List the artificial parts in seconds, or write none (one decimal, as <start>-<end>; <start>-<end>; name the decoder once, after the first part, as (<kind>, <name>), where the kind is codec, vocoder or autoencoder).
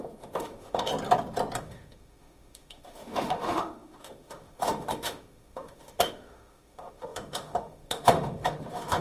0.0-0.9 (autoencoder, DAC-VAE); 1.6-9.0